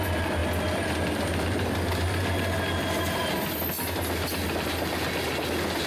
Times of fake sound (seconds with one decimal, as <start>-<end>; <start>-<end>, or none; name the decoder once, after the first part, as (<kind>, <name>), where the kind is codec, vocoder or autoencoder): none